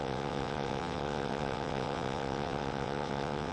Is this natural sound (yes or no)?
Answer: no